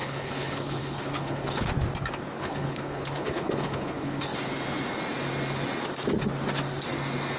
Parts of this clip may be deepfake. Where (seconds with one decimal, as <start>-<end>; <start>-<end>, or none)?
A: 0.0-1.7; 2.4-4.3